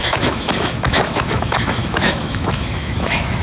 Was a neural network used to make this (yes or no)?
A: yes